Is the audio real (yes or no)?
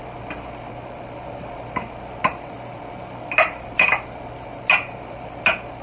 yes